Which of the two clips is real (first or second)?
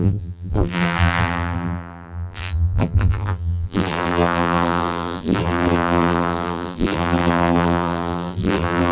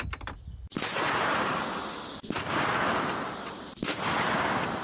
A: second